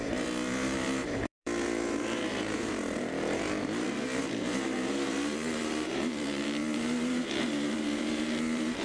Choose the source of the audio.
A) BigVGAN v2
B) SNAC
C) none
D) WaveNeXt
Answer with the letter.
A